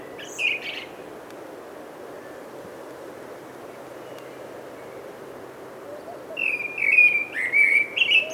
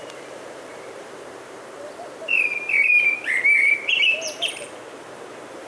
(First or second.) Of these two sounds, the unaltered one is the first